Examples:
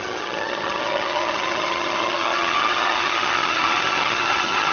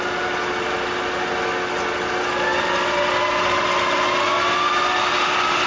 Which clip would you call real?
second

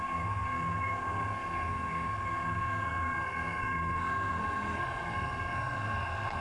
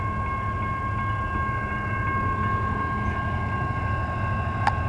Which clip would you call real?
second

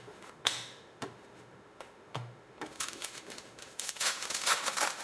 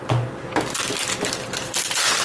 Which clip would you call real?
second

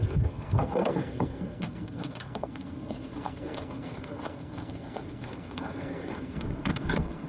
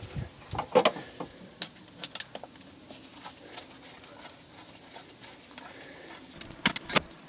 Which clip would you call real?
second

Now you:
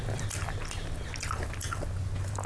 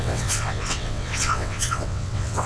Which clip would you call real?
first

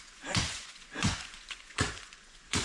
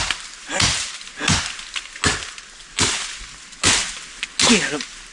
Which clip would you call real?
second